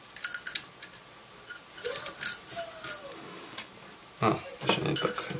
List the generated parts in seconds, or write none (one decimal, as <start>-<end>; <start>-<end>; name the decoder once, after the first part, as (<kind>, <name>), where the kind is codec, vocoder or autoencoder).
3.0-3.7 (codec, DAC)